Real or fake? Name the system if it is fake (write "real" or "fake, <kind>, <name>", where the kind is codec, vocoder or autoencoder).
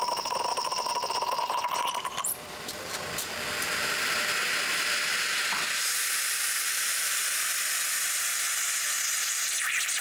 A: fake, vocoder, BigVGAN v2